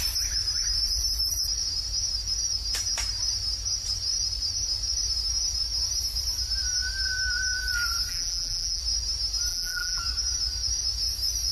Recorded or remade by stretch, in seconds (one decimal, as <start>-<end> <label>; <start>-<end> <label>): 0.0-8.1 recorded; 8.1-8.8 remade; 8.8-9.5 recorded; 9.5-10.0 remade; 10.0-11.5 recorded

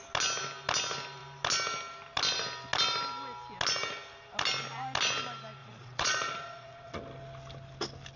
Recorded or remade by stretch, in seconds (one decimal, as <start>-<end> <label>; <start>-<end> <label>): 0.0-5.6 recorded; 5.6-7.0 remade; 7.0-8.2 recorded

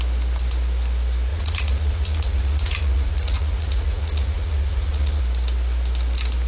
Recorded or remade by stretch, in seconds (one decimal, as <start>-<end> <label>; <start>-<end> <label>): 0.0-1.3 recorded; 1.3-5.2 remade; 5.2-6.5 recorded